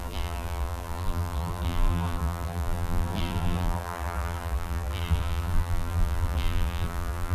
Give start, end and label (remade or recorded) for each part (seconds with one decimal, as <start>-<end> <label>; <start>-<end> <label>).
0.0-7.3 remade